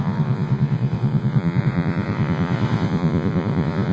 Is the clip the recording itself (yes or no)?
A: no